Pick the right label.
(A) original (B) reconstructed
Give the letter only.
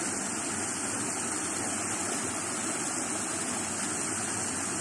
A